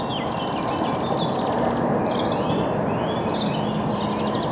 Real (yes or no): yes